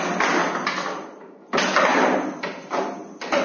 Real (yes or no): yes